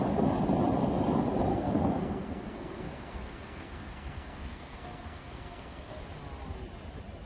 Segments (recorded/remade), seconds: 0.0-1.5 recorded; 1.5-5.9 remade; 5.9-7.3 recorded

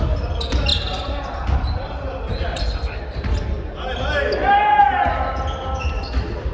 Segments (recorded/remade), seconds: 0.0-6.5 recorded

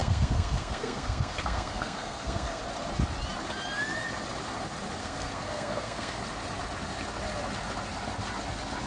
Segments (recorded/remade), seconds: 0.0-2.6 remade; 2.6-5.0 recorded; 5.0-6.2 remade; 6.2-8.9 recorded